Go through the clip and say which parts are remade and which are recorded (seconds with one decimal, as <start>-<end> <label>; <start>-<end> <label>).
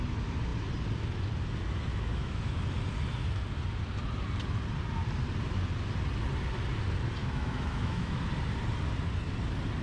0.0-1.9 recorded; 1.9-2.6 remade; 2.6-7.2 recorded; 7.2-8.2 remade; 8.2-9.8 recorded